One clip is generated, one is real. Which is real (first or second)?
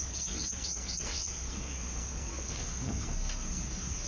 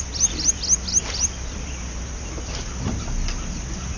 second